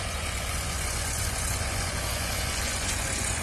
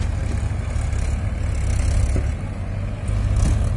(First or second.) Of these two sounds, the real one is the second